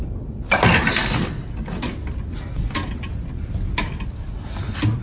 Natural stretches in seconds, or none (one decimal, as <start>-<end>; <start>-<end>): 0.0-5.0